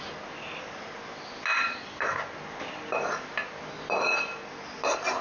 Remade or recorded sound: recorded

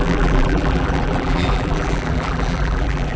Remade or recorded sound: remade